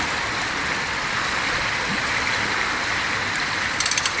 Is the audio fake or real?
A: real